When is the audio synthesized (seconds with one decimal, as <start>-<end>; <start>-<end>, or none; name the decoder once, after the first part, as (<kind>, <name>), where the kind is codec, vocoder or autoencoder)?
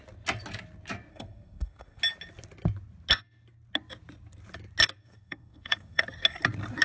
1.1-2.0 (codec, SNAC); 5.0-6.0